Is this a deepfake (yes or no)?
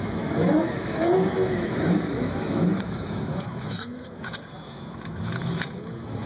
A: yes